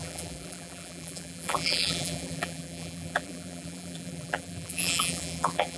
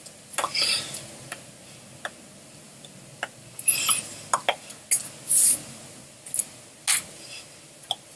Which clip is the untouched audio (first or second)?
second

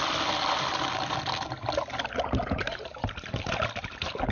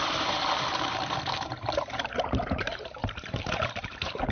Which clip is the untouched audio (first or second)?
first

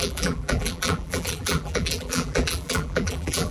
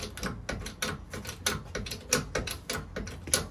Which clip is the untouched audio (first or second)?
second